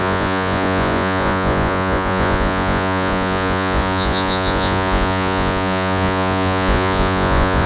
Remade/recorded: remade